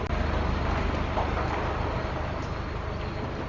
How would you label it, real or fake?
real